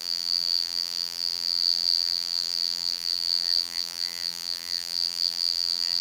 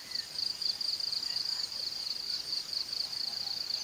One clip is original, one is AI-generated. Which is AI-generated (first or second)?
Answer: first